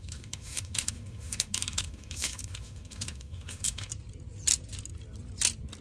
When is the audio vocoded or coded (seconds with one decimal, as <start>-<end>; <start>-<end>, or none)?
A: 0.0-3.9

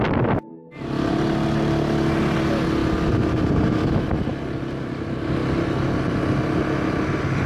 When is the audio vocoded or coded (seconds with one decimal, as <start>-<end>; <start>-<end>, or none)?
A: none

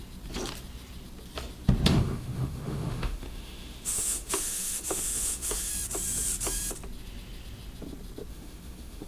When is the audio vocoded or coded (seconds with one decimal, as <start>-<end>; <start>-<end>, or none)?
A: 1.9-5.7; 8.3-9.1

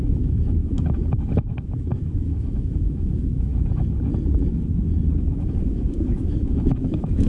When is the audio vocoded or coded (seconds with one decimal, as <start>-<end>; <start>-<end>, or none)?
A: 0.0-3.5; 5.2-7.3